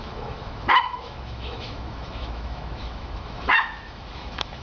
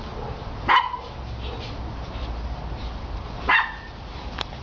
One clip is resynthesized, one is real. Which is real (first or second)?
second